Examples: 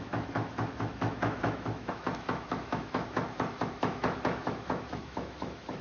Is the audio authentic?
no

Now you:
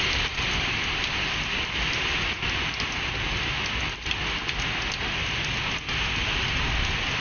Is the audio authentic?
yes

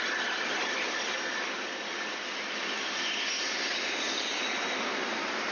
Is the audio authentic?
yes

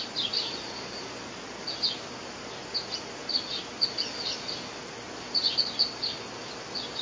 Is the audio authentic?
yes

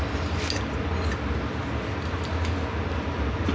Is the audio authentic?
yes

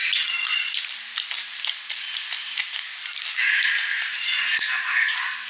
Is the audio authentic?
yes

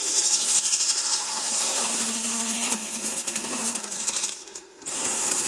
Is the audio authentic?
no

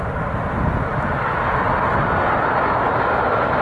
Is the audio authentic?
yes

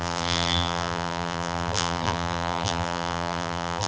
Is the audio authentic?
no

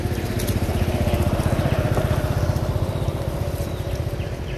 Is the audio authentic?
no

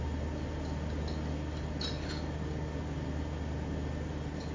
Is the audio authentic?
yes